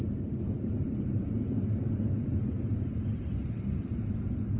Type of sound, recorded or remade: recorded